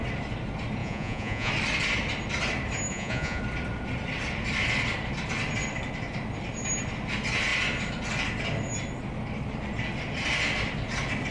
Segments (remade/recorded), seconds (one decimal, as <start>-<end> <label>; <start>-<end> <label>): 0.0-0.8 recorded; 0.8-1.5 remade; 1.5-2.9 recorded; 2.9-3.4 remade; 3.4-11.3 recorded